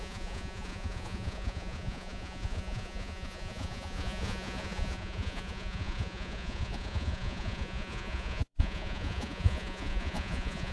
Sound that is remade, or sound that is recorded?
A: remade